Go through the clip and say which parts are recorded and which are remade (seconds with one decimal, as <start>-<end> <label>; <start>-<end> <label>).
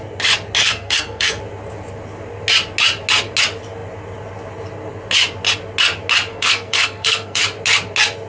0.0-0.6 recorded; 0.6-1.4 remade; 1.4-6.3 recorded; 6.3-7.4 remade; 7.4-8.3 recorded